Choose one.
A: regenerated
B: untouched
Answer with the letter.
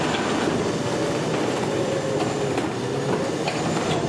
B